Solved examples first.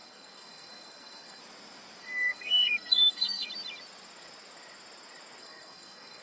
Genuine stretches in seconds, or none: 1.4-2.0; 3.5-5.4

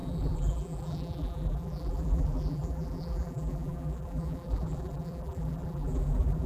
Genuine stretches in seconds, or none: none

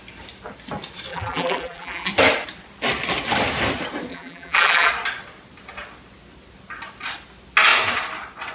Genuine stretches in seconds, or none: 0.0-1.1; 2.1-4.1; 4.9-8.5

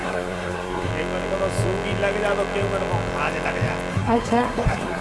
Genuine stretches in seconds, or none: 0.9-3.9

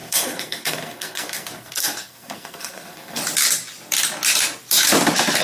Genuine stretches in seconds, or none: 3.2-5.4